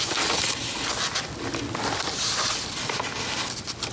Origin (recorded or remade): recorded